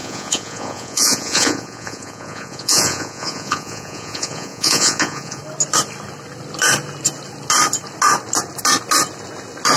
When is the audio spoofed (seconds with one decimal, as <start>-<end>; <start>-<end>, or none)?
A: 0.0-5.4